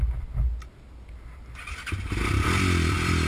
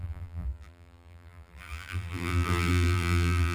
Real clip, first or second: first